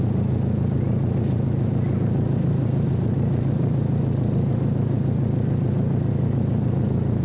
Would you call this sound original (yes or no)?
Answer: yes